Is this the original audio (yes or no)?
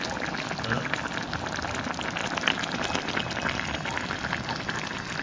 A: yes